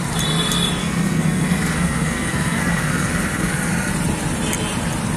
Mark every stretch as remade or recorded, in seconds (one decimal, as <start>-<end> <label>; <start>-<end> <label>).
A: 0.0-0.8 recorded; 0.8-3.9 remade; 3.9-5.2 recorded